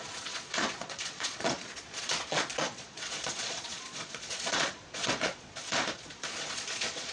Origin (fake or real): fake